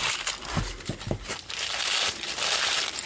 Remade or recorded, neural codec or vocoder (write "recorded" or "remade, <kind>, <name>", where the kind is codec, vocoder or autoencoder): remade, vocoder, BigVGAN v2